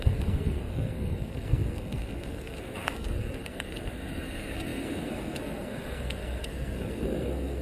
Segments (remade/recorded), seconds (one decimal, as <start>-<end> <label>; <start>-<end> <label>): 0.0-7.6 remade